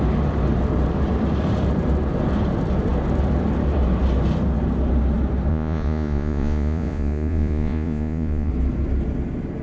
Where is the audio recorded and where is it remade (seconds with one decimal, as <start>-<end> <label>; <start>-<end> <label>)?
0.0-5.5 recorded; 5.5-8.5 remade; 8.5-9.6 recorded